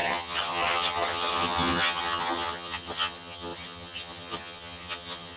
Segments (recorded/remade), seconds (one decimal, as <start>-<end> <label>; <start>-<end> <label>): 0.0-5.4 remade